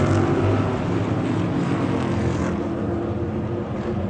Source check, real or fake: real